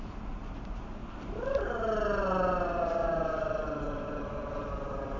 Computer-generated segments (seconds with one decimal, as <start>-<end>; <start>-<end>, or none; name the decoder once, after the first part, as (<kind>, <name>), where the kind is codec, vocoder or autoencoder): 0.0-1.0 (vocoder, BigVGAN v2); 3.8-5.2